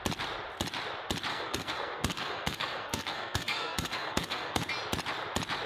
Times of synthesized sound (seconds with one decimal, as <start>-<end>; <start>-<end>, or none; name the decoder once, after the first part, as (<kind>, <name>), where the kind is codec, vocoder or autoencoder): 1.3-4.7 (codec, SNAC)